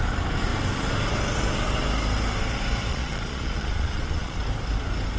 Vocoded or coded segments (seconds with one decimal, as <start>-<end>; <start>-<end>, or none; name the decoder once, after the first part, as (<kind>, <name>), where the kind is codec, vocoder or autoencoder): 2.9-4.4 (vocoder, Vocos)